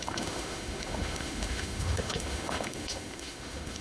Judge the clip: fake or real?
fake